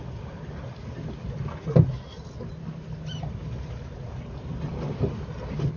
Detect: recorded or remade recorded